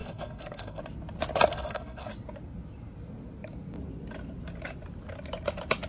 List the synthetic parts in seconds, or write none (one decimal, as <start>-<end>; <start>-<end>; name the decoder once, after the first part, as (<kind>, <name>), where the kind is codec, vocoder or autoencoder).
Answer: 0.0-0.8 (codec, SNAC); 1.5-2.1